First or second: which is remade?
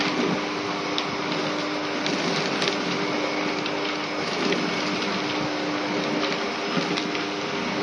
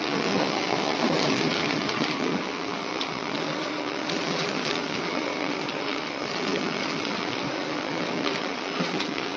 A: second